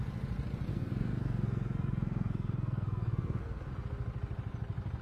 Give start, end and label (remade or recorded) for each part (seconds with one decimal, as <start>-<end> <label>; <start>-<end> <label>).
0.0-0.7 recorded; 0.7-3.7 remade; 3.7-5.0 recorded